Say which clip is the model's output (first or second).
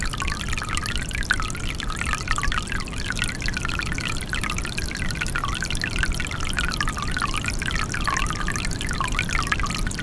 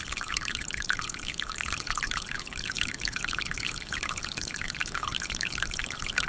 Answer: second